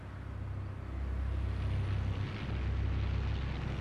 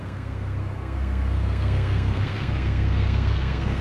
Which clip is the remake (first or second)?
second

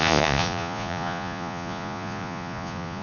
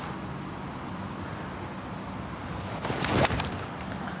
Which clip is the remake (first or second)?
first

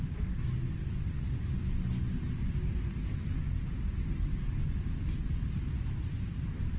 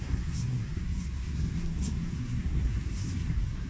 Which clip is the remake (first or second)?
second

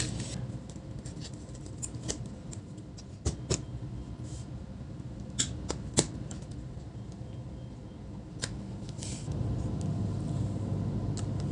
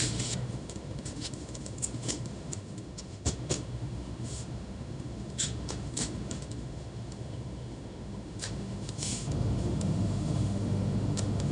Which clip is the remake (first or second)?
second